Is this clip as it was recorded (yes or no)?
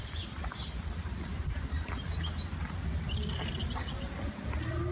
yes